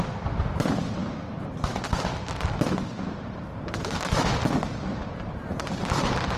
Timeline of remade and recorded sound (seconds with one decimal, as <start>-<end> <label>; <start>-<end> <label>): 0.0-1.0 remade; 1.0-3.2 recorded; 3.2-6.4 remade

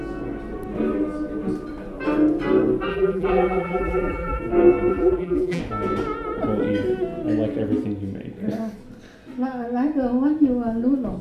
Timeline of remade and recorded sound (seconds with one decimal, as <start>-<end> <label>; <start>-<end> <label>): 0.0-2.9 recorded; 2.9-4.4 remade; 4.4-4.9 recorded; 4.9-5.6 remade; 5.6-11.2 recorded

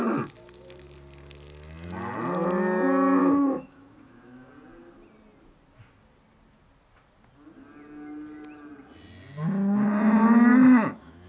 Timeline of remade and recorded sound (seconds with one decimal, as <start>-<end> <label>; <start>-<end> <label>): 0.0-3.2 recorded; 3.2-4.5 remade; 4.5-10.5 recorded; 10.5-11.3 remade

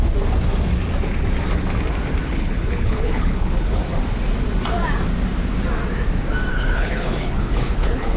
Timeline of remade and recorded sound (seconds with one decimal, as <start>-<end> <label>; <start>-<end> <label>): 0.0-2.2 recorded; 2.2-3.8 remade; 3.8-6.5 recorded; 6.5-8.2 remade

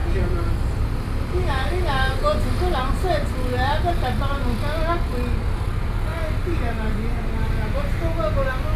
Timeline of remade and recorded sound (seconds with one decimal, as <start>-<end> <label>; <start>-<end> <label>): 0.0-8.8 recorded